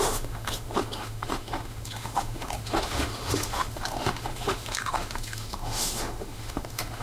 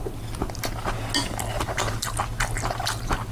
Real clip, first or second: second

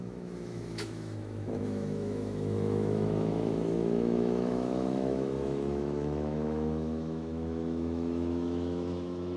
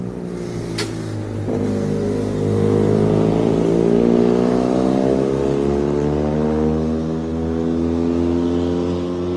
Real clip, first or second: second